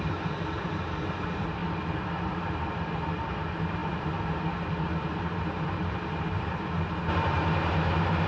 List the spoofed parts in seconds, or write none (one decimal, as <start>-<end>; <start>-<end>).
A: 0.0-1.6; 2.1-8.3